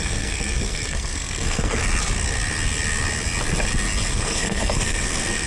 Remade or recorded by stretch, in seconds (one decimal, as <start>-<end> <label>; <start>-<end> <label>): 0.0-1.8 remade; 1.8-4.1 recorded; 4.1-5.5 remade